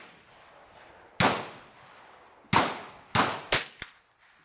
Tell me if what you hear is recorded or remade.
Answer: recorded